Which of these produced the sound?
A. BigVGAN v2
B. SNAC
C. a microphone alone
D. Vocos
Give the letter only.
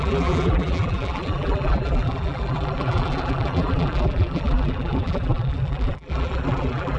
A